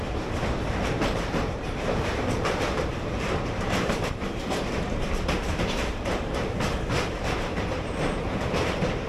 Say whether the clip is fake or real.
fake